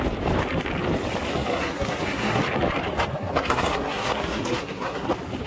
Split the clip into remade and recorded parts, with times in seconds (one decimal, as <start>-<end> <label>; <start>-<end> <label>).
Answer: 0.0-1.3 recorded; 1.3-2.4 remade; 2.4-3.1 recorded; 3.1-5.1 remade; 5.1-5.5 recorded